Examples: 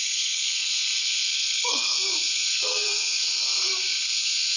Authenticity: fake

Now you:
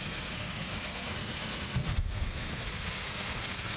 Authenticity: fake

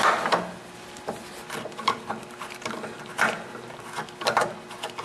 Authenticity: real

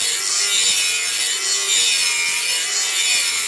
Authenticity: real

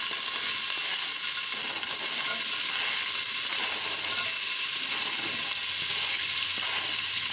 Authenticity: real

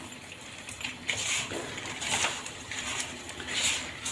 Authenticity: real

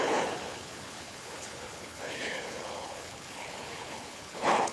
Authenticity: fake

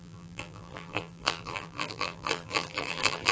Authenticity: fake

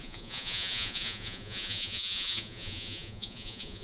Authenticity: fake